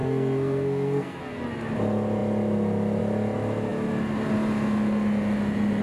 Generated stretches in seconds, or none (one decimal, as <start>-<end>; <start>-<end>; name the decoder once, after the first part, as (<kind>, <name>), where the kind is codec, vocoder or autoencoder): 0.0-1.2 (codec, SNAC)